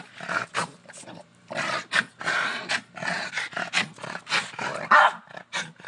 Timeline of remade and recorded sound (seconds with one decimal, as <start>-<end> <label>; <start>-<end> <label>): 0.0-5.9 remade